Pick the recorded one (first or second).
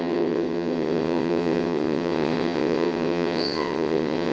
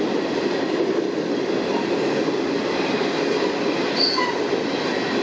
second